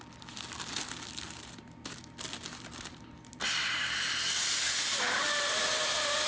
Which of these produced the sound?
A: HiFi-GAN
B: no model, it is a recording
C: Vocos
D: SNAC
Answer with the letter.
B